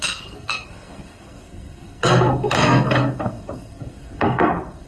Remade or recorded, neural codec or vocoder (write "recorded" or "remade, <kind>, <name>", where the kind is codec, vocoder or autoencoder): remade, codec, SNAC